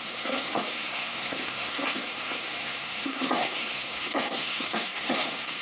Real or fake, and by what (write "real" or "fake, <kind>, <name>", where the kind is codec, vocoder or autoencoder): fake, codec, SNAC